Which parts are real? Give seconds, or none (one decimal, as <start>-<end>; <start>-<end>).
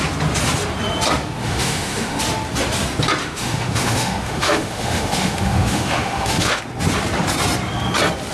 0.0-1.4; 2.2-3.2; 6.6-8.3